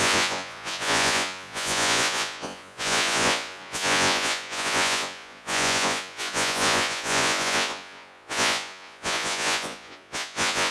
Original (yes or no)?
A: no